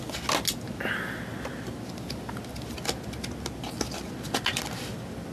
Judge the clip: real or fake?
real